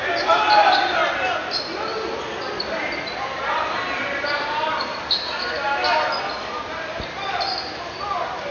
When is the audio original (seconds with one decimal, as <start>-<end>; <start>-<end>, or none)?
0.0-8.5